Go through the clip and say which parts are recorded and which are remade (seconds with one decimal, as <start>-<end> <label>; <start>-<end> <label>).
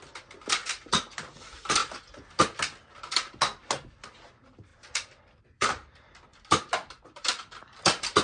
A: 0.0-1.8 remade; 1.8-4.3 recorded; 4.3-8.2 remade